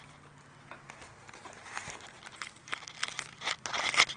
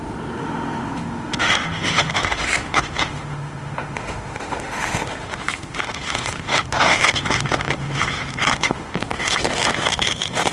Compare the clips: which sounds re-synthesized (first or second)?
second